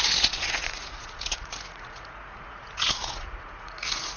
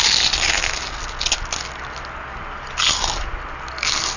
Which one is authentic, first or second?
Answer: second